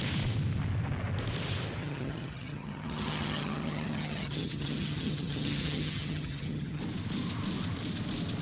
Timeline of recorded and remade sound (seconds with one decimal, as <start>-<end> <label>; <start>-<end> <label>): 0.0-1.8 recorded; 1.8-6.8 remade; 6.8-8.4 recorded